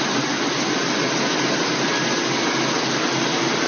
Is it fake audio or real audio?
real